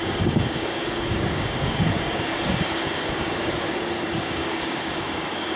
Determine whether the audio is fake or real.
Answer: fake